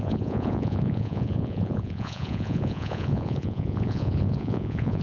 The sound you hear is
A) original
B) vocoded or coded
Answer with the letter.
B